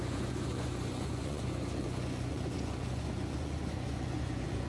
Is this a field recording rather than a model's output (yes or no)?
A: no